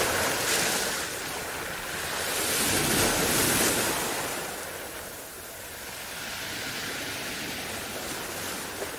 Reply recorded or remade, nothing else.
recorded